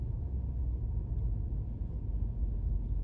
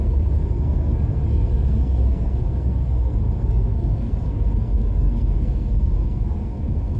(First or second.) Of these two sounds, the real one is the first